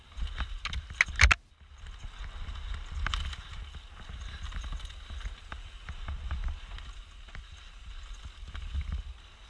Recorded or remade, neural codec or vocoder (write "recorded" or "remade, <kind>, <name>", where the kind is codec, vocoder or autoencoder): recorded